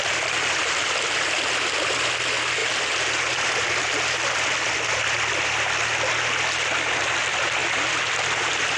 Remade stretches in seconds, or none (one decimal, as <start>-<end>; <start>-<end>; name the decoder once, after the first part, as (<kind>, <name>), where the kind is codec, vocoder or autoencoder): none